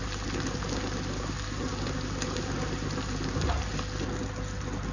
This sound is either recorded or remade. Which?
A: recorded